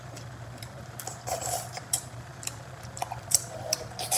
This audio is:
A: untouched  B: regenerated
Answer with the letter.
B